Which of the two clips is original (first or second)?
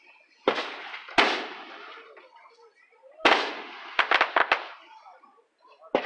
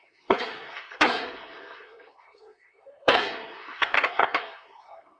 first